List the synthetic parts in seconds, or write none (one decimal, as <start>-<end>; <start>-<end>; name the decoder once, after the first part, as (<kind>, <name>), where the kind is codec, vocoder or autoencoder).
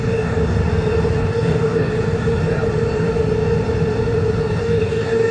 0.0-0.6 (codec, DAC); 1.2-1.9; 4.6-5.3